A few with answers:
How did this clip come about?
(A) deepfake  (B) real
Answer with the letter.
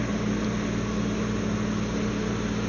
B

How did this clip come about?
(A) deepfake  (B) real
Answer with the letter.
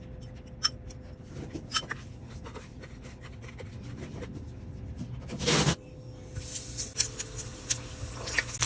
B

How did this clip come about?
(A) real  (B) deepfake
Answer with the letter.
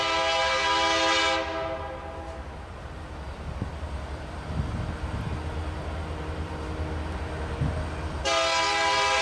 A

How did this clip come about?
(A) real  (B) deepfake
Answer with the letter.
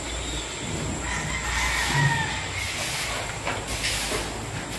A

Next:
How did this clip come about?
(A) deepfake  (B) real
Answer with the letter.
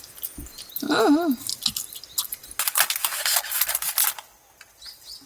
B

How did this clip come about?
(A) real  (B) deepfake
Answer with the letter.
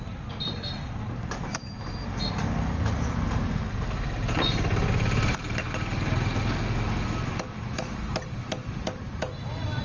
A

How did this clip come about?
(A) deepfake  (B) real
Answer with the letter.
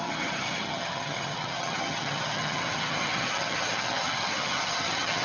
A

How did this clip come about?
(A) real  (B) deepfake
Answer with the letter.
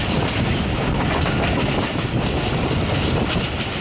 A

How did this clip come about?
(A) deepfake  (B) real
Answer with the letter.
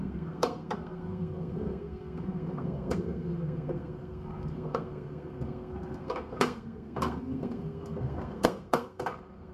A